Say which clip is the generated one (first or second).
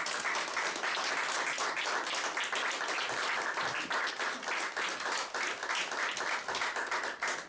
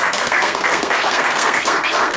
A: second